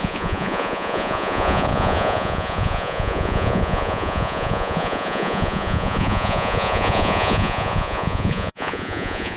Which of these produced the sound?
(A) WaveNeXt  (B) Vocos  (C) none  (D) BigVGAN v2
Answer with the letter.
B